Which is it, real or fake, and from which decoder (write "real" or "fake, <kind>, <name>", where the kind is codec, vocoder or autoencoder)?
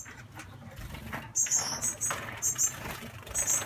real